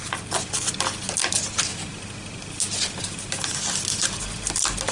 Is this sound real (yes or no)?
yes